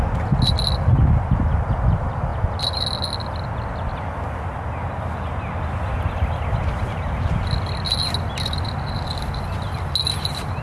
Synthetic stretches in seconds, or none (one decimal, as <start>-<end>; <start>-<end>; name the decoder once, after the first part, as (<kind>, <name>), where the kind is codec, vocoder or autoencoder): none

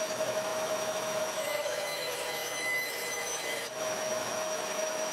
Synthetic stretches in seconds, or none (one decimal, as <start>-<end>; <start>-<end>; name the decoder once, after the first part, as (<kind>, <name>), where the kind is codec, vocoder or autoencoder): 0.0-5.1 (autoencoder, DAC-VAE)

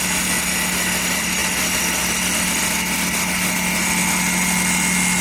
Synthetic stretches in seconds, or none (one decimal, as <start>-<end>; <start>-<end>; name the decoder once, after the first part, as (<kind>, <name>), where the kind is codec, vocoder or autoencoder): none

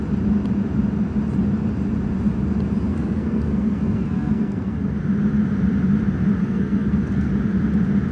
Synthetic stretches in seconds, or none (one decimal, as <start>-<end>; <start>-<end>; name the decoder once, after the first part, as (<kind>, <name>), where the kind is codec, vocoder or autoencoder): 2.9-5.0 (codec, SNAC); 6.4-7.3